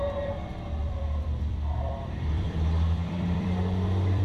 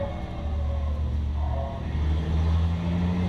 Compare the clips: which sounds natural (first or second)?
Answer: second